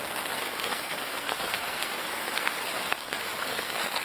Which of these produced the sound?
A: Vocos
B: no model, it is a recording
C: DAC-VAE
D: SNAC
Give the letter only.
D